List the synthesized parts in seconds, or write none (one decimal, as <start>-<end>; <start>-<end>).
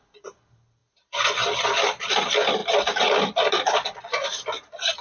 none